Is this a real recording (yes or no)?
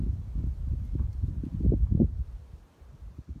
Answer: yes